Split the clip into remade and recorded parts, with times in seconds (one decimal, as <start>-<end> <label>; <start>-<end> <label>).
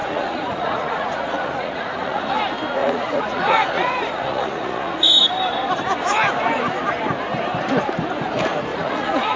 0.0-2.4 remade; 2.4-2.8 recorded; 2.8-5.2 remade; 5.2-8.7 recorded; 8.7-9.4 remade